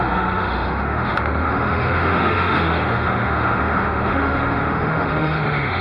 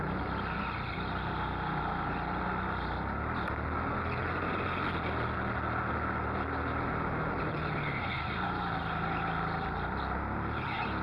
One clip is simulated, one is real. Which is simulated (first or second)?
first